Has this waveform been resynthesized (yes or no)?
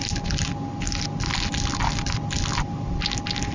no